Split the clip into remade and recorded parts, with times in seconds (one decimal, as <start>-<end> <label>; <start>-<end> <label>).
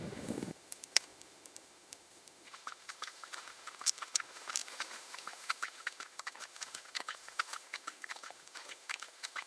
0.0-9.5 remade